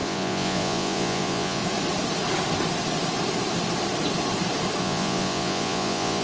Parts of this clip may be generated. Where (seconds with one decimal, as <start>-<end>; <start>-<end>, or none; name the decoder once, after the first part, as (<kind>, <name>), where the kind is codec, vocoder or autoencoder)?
0.0-1.6 (vocoder, Vocos); 4.8-6.2